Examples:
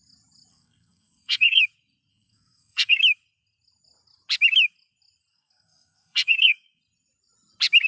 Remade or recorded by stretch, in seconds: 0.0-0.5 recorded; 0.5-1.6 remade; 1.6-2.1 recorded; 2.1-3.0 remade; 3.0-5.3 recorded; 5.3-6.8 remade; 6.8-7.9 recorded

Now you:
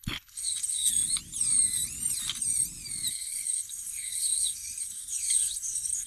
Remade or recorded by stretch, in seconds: 0.0-0.9 remade; 0.9-3.1 recorded; 3.1-6.1 remade

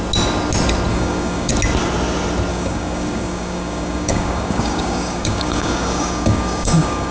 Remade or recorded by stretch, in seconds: 0.0-0.9 recorded; 0.9-1.5 remade; 1.5-2.5 recorded; 2.5-7.1 remade